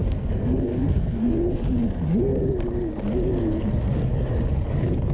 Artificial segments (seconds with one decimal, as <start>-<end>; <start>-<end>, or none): 0.0-1.3